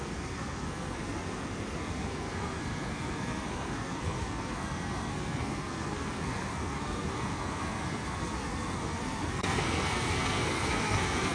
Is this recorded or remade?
remade